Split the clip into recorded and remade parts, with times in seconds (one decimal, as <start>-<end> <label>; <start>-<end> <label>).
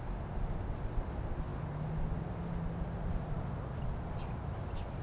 0.0-5.0 recorded